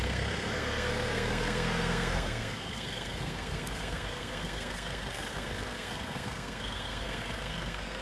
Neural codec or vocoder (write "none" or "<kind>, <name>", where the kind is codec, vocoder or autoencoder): codec, SNAC